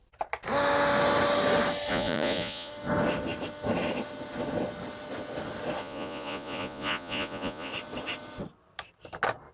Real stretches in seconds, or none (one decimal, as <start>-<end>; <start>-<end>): 0.0-1.9; 2.7-5.8; 7.7-9.5